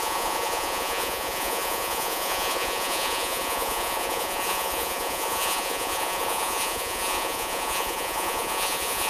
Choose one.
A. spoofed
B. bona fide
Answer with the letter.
A